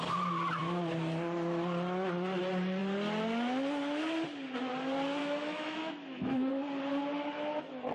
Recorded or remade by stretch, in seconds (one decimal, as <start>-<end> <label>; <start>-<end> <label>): 0.0-5.2 recorded; 5.2-6.5 remade; 6.5-7.9 recorded